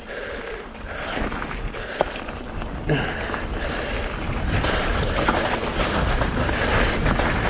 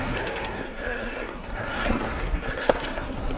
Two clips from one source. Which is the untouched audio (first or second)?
first